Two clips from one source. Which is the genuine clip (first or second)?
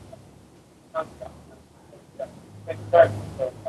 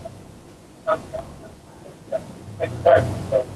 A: first